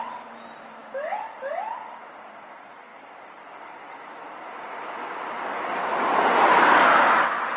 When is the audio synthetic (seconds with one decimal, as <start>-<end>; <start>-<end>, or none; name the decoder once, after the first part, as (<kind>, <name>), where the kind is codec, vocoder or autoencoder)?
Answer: 0.8-1.7 (vocoder, BigVGAN v2); 2.9-6.0